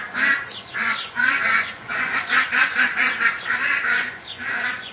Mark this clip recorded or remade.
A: remade